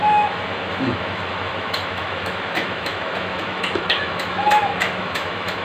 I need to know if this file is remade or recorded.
remade